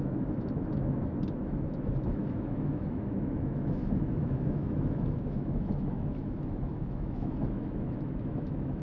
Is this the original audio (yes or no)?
no